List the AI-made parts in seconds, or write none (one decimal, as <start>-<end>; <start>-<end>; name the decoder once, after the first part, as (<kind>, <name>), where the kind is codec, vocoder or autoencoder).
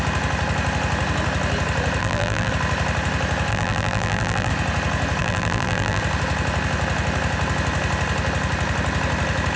2.0-2.5 (vocoder, BigVGAN v2); 3.5-4.5; 5.2-6.0